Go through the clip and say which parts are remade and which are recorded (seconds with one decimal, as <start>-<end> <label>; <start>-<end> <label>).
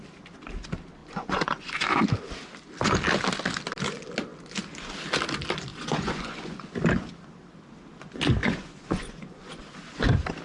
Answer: 0.0-1.0 recorded; 1.0-2.0 remade; 2.0-5.7 recorded; 5.7-6.6 remade; 6.6-8.4 recorded; 8.4-9.6 remade; 9.6-10.4 recorded